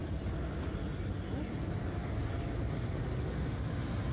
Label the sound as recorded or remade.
recorded